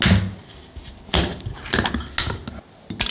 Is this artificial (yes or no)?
no